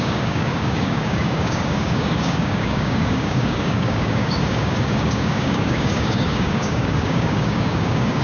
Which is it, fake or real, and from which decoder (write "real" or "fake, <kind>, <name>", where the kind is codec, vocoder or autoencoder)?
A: fake, codec, DAC